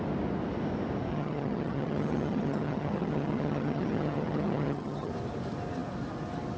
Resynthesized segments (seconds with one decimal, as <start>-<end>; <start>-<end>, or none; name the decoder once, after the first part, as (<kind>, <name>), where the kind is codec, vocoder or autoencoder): 1.1-5.1 (vocoder, HiFi-GAN)